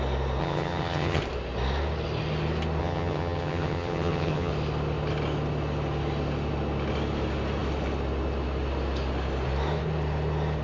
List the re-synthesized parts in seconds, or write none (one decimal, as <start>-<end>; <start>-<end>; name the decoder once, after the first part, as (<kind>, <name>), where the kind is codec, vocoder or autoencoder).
0.4-1.2 (vocoder, HiFi-GAN); 2.8-4.5